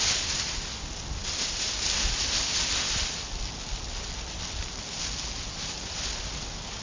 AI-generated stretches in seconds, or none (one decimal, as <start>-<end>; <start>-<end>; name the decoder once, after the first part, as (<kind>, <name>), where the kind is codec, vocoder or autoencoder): none